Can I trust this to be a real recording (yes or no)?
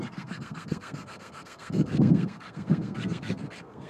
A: no